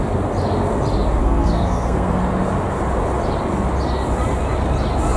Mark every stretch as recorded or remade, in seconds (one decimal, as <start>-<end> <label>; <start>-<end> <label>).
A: 0.0-1.2 recorded; 1.2-2.2 remade; 2.2-5.2 recorded